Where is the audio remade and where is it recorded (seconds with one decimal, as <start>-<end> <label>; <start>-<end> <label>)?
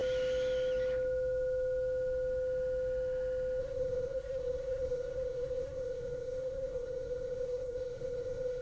0.0-3.6 recorded; 3.6-8.6 remade